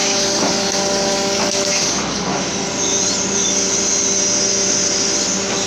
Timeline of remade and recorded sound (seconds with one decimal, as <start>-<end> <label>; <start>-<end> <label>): 0.0-2.3 remade; 2.3-5.7 recorded